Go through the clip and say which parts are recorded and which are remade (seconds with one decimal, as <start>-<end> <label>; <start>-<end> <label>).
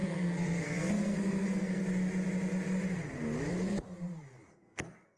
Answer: 0.0-1.8 remade; 1.8-4.5 recorded; 4.5-5.2 remade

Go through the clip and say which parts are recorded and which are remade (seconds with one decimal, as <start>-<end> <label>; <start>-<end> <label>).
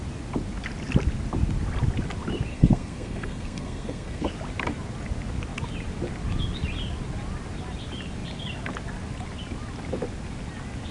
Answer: 0.0-2.5 recorded; 2.5-4.3 remade; 4.3-10.9 recorded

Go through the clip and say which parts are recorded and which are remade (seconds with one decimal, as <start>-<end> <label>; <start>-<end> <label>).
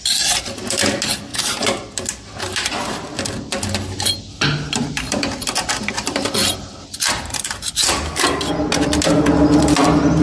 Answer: 0.0-6.4 recorded; 6.4-8.0 remade; 8.0-10.2 recorded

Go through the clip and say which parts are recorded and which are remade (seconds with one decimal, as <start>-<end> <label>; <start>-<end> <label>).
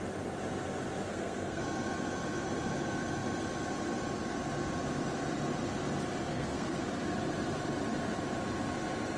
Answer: 0.0-1.1 recorded; 1.1-1.6 remade; 1.6-6.3 recorded; 6.3-6.8 remade; 6.8-9.2 recorded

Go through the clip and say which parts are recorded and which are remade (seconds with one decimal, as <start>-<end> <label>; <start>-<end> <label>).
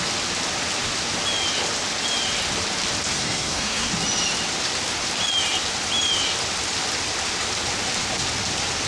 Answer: 0.0-3.1 recorded; 3.1-3.9 remade; 3.9-8.9 recorded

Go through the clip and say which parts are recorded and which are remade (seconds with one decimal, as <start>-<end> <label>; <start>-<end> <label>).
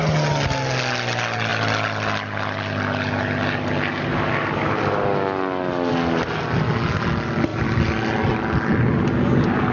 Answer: 0.0-9.7 recorded